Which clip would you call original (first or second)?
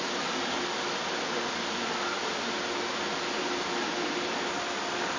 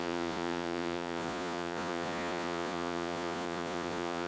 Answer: first